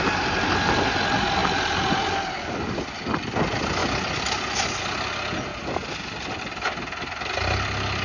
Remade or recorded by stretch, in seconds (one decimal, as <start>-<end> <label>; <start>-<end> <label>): 0.0-1.4 recorded; 1.4-3.4 remade; 3.4-5.5 recorded; 5.5-6.4 remade; 6.4-8.0 recorded